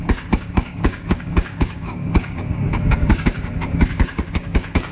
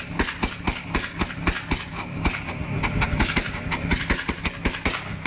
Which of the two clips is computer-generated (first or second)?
first